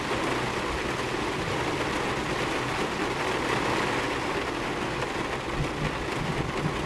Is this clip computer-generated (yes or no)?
no